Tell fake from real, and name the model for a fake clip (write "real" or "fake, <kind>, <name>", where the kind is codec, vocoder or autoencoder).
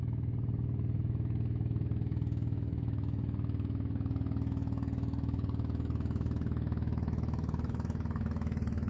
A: fake, autoencoder, DAC-VAE